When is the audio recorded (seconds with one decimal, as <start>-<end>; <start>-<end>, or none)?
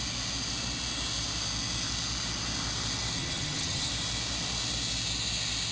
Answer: 0.0-3.2; 3.9-5.7